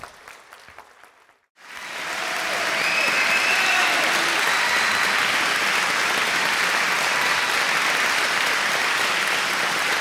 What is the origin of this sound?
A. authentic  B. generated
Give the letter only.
A